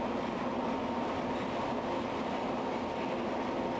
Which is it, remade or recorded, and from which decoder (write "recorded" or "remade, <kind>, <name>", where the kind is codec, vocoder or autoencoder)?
recorded